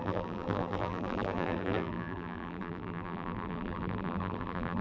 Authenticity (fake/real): fake